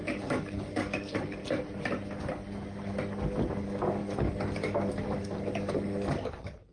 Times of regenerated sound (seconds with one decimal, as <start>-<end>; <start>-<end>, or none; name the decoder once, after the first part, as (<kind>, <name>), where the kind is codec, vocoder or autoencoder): 0.0-1.4 (codec, DAC); 3.6-6.7